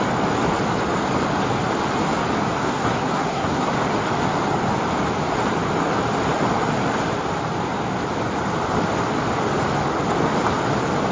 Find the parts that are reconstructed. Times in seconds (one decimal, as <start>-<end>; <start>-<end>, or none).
2.6-3.7